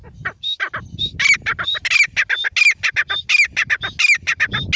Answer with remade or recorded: recorded